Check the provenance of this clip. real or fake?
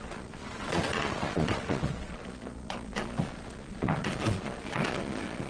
fake